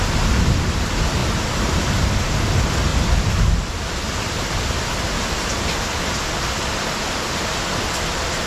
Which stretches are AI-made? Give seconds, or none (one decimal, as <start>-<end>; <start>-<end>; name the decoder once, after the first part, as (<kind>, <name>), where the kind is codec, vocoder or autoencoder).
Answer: none